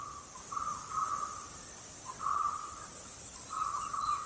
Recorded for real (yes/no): yes